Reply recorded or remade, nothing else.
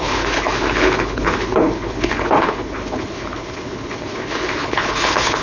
remade